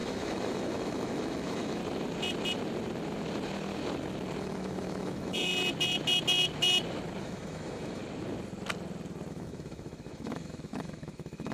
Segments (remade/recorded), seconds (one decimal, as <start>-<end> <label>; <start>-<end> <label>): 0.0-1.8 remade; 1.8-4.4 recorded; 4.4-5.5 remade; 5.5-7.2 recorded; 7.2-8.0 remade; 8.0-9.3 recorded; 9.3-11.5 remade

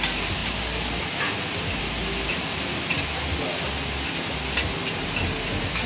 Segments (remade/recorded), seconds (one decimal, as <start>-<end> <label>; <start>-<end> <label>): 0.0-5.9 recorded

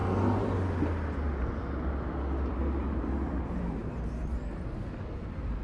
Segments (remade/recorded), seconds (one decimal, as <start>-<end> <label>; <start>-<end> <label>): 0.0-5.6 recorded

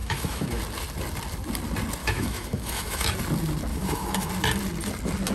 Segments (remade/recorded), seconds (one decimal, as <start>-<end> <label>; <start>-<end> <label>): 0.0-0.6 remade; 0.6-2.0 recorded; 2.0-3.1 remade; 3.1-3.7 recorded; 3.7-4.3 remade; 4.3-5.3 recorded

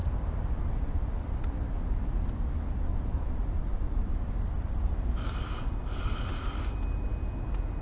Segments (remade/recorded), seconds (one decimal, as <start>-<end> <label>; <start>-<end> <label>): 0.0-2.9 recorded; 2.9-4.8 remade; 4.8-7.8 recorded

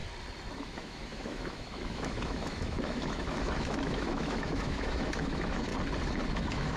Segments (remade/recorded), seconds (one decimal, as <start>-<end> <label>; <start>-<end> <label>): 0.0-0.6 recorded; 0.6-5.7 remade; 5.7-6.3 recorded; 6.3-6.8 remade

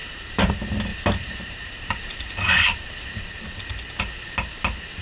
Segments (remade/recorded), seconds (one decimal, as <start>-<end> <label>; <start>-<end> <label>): 0.0-0.5 remade; 0.5-0.9 recorded; 0.9-3.2 remade; 3.2-5.0 recorded

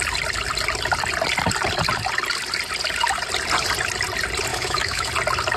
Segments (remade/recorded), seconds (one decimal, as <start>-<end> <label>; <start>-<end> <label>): 0.0-4.5 recorded; 4.5-5.1 remade; 5.1-5.6 recorded